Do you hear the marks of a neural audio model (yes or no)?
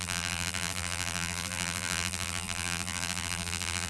yes